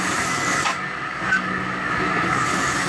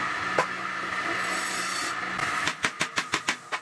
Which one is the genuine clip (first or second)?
second